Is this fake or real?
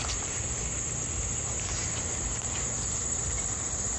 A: real